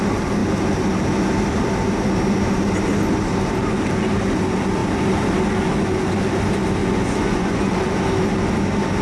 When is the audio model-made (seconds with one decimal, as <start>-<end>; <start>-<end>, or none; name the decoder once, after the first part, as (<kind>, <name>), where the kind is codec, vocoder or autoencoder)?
6.8-7.7 (vocoder, Vocos)